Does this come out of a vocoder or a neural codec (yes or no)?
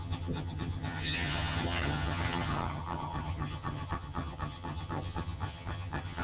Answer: yes